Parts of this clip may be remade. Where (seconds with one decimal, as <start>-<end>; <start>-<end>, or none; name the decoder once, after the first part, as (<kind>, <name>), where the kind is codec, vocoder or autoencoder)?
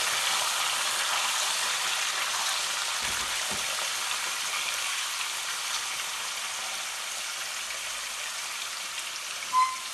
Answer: none